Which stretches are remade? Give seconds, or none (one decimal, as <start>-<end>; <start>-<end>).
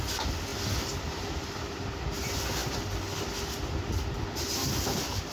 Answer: none